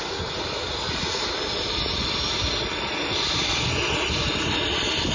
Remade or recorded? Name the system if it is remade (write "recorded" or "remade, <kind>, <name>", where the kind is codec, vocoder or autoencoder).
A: recorded